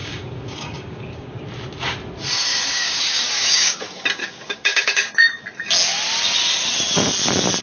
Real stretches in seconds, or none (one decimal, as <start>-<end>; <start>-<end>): 1.4-2.5; 3.8-4.2; 5.1-7.6